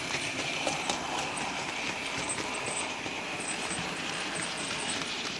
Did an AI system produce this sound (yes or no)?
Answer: yes